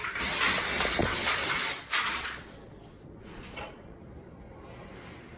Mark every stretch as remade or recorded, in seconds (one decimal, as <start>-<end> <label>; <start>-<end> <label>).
0.0-1.0 recorded; 1.0-4.0 remade; 4.0-5.4 recorded